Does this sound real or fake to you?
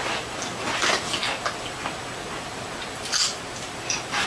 real